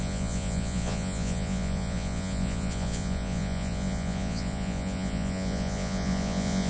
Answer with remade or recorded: remade